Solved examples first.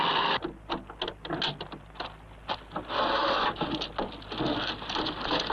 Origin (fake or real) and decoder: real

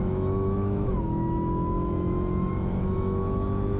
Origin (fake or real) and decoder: fake, autoencoder, DAC-VAE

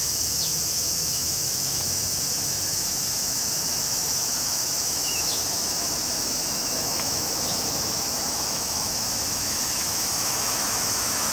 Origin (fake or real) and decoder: fake, autoencoder, DAC-VAE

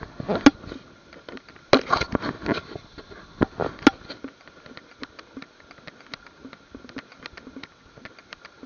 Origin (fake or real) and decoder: real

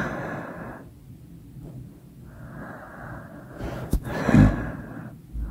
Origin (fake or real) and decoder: real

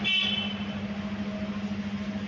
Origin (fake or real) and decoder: real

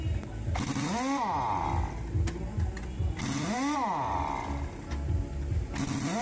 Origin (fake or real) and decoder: real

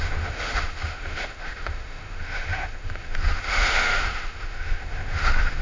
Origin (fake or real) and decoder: fake, autoencoder, DAC-VAE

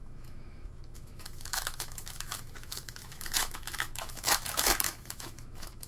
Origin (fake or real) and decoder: fake, autoencoder, DAC-VAE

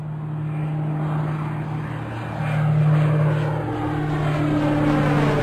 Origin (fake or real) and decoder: real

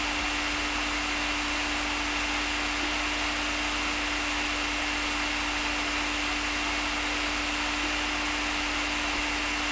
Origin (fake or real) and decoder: real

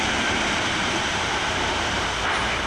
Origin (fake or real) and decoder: real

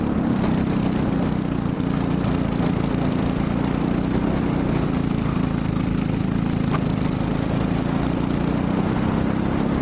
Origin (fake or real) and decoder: real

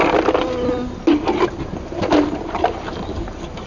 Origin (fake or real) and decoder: real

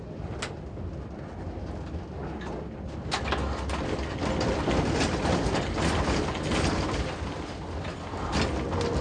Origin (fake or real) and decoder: real